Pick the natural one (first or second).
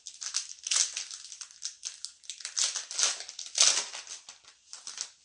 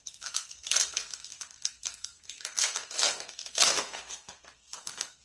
first